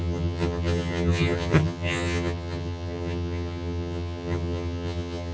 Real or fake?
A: fake